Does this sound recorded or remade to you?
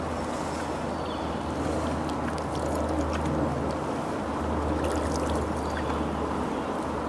recorded